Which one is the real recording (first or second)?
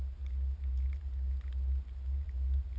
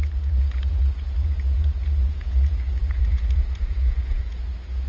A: first